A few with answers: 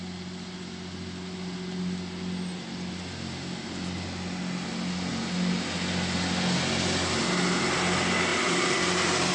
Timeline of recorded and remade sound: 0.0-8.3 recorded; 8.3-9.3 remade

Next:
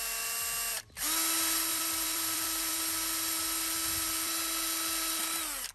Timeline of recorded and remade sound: 0.0-1.7 recorded; 1.7-2.8 remade; 2.8-5.7 recorded

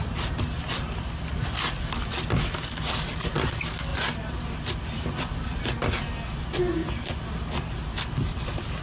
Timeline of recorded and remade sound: 0.0-3.9 recorded; 3.9-5.6 remade; 5.6-6.8 recorded; 6.8-8.8 remade

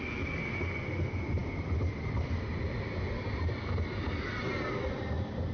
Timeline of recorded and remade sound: 0.0-1.4 recorded; 1.4-3.4 remade; 3.4-5.5 recorded

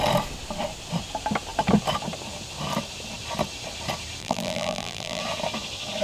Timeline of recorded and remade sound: 0.0-4.2 recorded; 4.2-5.2 remade; 5.2-6.0 recorded

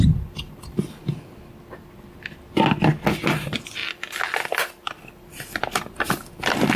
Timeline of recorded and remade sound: 0.0-1.0 remade; 1.0-3.3 recorded; 3.3-6.8 remade

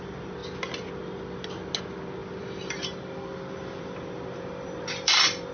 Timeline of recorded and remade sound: 0.0-2.2 recorded; 2.2-5.5 remade